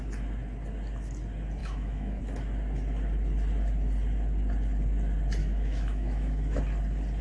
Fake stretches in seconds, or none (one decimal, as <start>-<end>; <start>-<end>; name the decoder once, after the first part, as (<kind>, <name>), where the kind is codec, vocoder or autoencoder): 1.6-2.2 (autoencoder, DAC-VAE); 5.4-6.6